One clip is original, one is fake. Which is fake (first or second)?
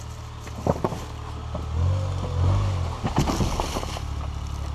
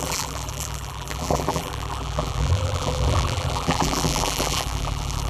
second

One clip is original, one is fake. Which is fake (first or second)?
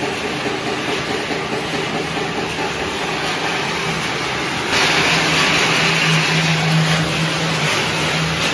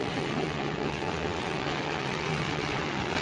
second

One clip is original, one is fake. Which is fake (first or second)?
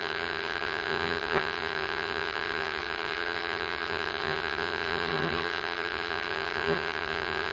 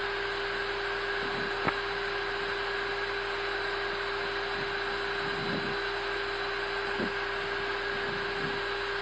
first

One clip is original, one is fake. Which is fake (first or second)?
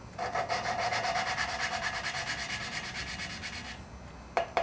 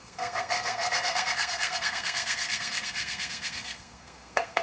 second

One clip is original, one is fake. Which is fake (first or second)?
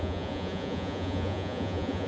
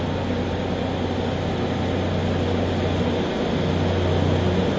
first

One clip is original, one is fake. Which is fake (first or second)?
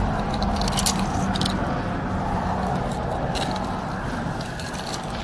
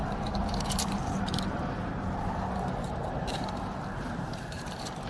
second